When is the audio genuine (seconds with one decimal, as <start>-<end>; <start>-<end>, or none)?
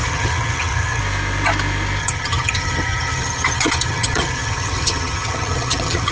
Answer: 1.0-2.0